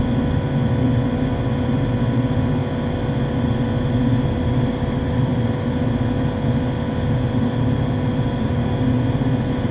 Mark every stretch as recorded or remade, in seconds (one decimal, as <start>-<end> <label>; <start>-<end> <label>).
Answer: 0.0-9.7 recorded